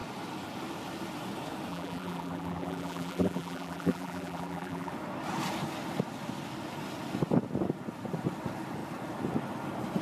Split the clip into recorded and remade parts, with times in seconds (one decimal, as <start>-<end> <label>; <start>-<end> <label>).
0.0-1.7 recorded; 1.7-4.9 remade; 4.9-10.0 recorded